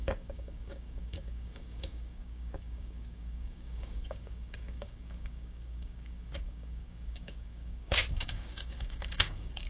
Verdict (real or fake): fake